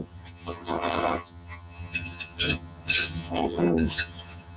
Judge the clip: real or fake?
fake